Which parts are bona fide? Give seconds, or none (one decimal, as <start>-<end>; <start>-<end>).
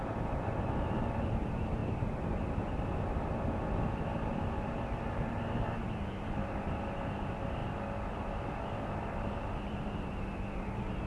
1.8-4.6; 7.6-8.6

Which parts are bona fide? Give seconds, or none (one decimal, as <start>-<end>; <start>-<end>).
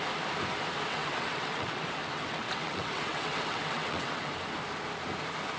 0.0-0.9; 4.3-5.6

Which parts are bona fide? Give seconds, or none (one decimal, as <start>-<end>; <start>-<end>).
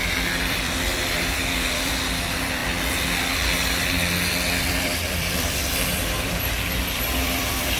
2.6-4.6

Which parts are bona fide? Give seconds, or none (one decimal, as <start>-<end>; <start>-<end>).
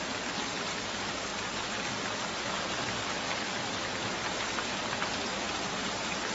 1.3-5.1